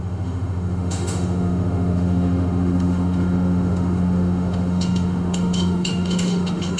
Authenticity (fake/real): fake